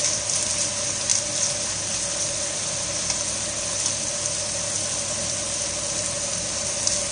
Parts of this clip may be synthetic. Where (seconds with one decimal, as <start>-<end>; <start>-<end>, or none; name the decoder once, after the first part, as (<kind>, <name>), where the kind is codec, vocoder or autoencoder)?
none